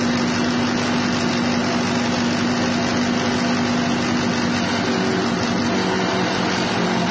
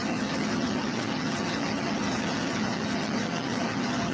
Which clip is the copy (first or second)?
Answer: second